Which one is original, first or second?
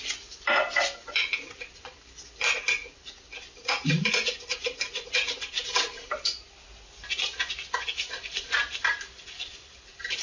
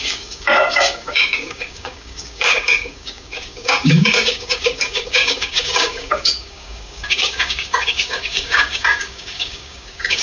first